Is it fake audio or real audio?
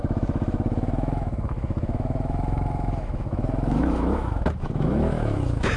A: fake